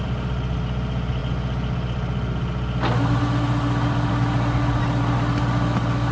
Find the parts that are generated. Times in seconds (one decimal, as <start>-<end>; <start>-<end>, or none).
none